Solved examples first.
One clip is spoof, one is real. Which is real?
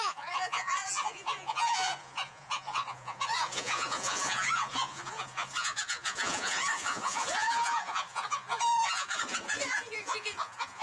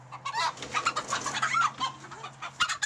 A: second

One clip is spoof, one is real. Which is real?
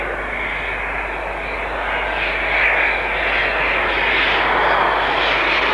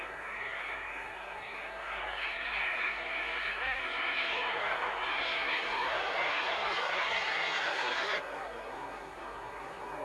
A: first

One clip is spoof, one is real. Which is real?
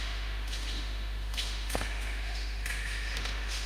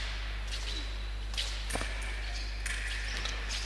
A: second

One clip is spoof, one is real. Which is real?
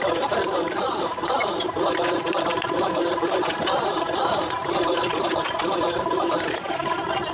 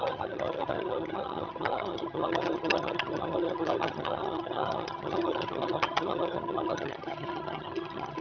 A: first